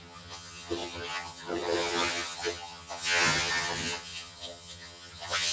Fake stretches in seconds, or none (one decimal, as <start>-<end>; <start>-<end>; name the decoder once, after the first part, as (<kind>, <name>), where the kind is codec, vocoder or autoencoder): 0.0-5.5 (vocoder, HiFi-GAN)